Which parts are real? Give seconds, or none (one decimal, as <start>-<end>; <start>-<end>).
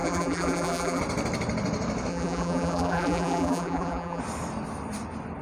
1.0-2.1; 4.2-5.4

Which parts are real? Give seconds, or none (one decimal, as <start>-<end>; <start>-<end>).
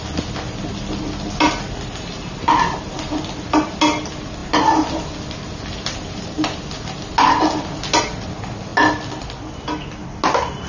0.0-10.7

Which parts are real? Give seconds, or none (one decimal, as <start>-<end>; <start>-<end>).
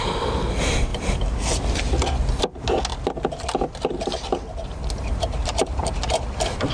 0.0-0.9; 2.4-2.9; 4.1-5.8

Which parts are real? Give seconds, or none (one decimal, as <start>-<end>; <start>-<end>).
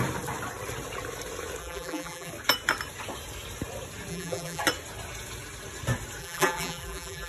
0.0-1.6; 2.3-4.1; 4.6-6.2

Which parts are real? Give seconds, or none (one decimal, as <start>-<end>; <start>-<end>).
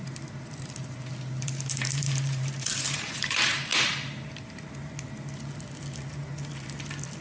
0.0-1.4; 3.7-7.2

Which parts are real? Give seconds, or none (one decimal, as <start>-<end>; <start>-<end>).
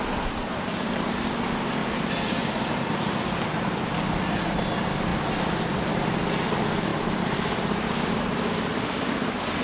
0.0-0.5; 1.1-1.8; 3.8-6.9; 8.2-9.6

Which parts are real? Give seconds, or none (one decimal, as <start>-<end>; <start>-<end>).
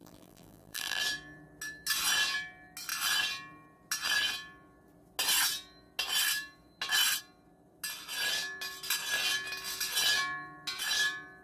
1.0-11.4